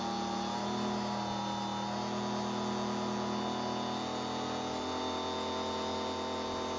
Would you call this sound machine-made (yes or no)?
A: no